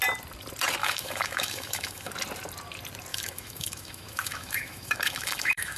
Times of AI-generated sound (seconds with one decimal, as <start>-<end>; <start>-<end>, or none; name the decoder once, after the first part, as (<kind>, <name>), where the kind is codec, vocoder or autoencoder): 0.8-2.1 (autoencoder, DAC-VAE); 3.1-5.8